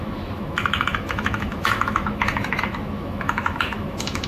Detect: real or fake fake